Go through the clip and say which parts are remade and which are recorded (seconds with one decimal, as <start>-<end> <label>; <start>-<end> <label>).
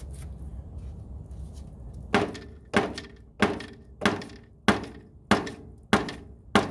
0.0-6.7 recorded